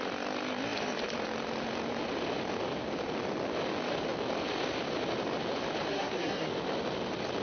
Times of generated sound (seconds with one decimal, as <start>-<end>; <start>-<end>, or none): 5.9-6.5